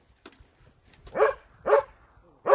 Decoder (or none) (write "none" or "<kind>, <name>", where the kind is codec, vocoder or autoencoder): none